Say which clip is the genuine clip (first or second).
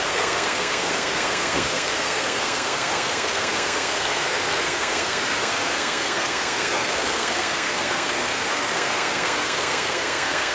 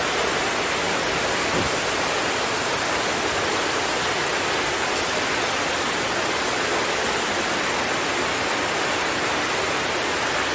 second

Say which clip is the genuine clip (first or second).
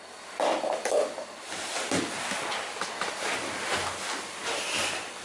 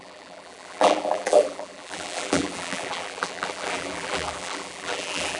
first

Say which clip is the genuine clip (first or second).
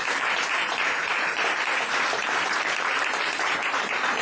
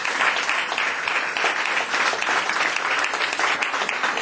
second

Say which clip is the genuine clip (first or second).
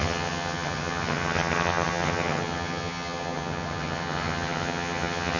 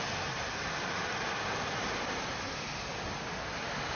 second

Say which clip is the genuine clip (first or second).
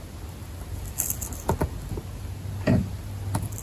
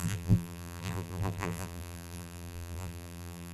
first